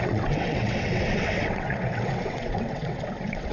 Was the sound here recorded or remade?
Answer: remade